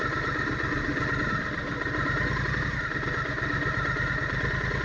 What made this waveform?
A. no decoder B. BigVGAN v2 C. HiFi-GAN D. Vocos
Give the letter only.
A